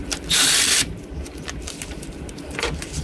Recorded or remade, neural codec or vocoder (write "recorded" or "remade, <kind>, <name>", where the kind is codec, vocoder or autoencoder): remade, vocoder, BigVGAN v2